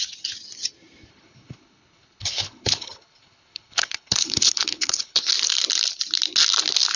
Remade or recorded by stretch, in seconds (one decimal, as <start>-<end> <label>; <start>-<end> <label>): 0.0-1.1 recorded; 1.1-5.3 remade; 5.3-7.0 recorded